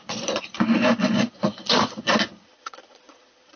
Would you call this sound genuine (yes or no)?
no